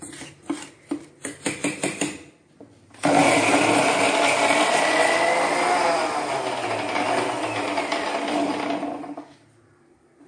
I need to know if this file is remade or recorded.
recorded